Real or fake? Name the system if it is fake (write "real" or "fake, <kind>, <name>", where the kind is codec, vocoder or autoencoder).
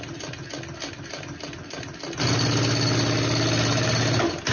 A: real